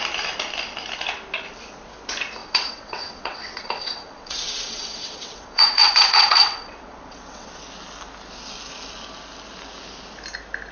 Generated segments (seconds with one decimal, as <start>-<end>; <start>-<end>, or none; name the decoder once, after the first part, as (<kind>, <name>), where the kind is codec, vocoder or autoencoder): 2.4-7.6 (vocoder, WaveNeXt)